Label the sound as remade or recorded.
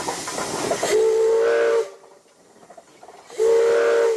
recorded